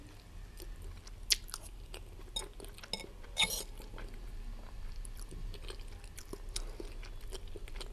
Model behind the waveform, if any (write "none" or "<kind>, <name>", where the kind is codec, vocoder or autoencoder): none